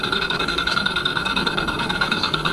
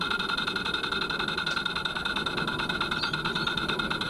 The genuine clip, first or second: second